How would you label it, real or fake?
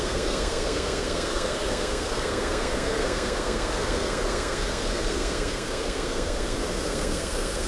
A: fake